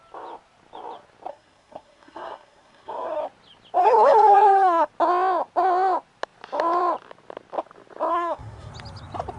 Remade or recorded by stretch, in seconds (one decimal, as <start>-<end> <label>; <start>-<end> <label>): 0.0-1.3 recorded; 1.3-3.2 remade; 3.2-3.8 recorded; 3.8-4.9 remade; 4.9-8.1 recorded; 8.1-8.7 remade; 8.7-9.4 recorded